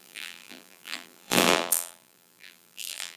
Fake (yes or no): yes